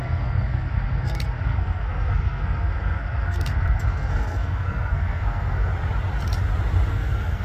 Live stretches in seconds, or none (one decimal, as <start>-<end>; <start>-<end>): 5.7-6.9